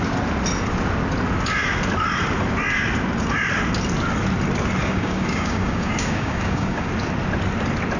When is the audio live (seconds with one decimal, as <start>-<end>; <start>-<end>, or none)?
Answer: 0.0-4.8; 6.9-8.0